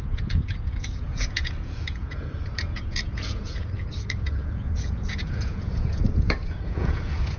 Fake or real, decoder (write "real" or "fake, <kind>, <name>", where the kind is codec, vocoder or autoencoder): fake, vocoder, Vocos